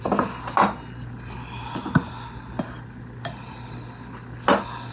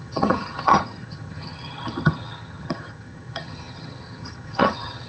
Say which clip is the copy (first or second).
second